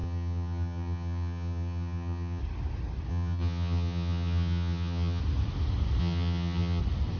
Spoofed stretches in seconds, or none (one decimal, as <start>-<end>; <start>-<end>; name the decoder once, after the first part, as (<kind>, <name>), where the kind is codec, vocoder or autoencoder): 0.0-2.4 (vocoder, HiFi-GAN); 3.1-5.2; 6.0-6.8

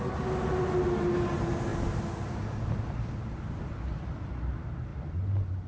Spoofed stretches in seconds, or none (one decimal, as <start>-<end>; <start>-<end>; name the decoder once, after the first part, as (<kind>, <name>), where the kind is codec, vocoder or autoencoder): none

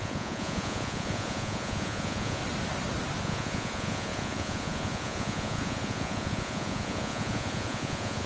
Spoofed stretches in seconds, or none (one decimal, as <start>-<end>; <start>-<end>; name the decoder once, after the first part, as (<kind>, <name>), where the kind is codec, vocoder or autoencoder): 0.0-2.4 (vocoder, Vocos); 3.2-8.3

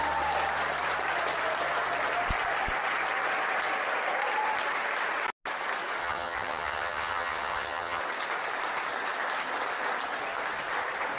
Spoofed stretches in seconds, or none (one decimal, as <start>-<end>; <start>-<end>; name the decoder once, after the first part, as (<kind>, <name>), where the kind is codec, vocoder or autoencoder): 6.0-8.0 (vocoder, HiFi-GAN)